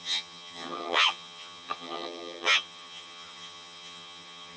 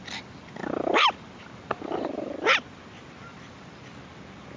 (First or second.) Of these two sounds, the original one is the second